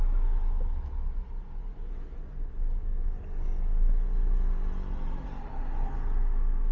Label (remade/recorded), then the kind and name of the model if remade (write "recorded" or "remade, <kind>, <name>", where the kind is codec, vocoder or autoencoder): recorded